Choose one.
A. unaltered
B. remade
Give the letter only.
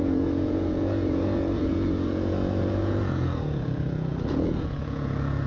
B